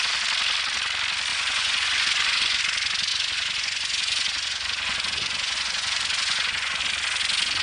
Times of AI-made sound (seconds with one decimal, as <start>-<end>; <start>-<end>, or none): 1.3-2.6; 3.1-6.8